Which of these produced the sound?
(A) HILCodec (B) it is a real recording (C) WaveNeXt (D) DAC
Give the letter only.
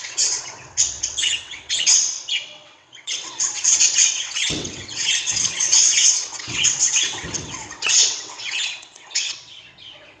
C